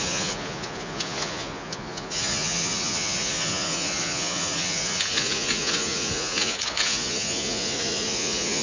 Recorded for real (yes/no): no